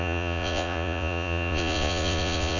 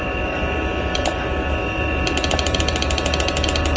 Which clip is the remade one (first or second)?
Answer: first